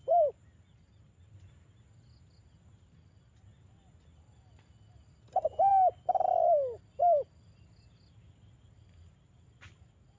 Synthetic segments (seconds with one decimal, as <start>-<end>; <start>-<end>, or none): none